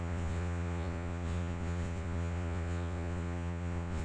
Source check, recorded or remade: remade